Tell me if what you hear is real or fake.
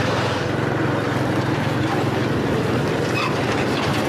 real